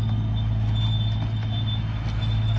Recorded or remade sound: recorded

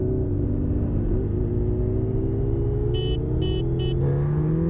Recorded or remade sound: recorded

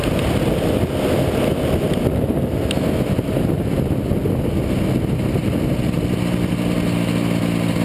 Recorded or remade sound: recorded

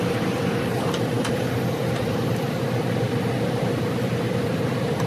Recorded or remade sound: remade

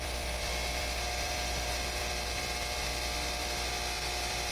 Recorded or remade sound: remade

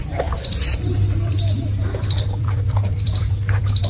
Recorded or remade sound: remade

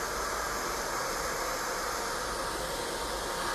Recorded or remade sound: recorded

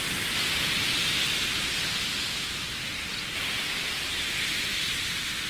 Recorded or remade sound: recorded